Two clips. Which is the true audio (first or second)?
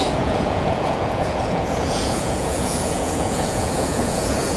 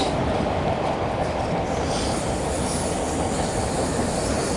second